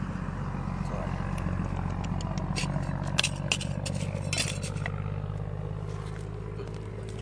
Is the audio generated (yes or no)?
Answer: no